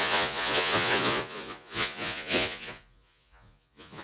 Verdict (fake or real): fake